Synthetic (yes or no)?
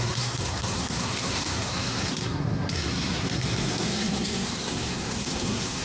yes